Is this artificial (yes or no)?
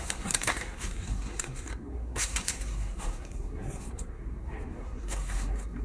yes